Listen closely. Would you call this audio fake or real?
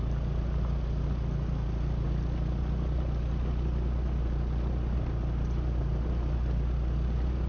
real